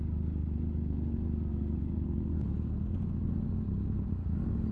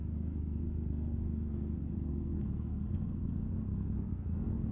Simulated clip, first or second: second